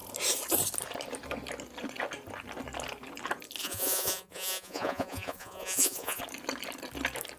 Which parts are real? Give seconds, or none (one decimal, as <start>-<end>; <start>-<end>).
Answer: 0.0-3.6; 6.2-7.4